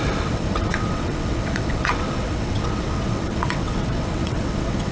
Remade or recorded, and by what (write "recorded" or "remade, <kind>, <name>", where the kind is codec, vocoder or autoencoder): remade, vocoder, WaveNeXt